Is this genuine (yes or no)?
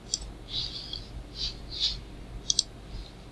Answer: yes